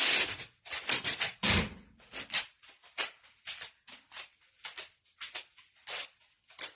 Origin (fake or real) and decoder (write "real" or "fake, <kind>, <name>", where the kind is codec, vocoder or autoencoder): fake, vocoder, BigVGAN v2